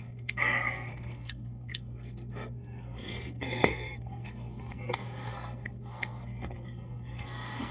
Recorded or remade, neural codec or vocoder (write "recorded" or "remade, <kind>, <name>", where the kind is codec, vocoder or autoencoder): remade, codec, SNAC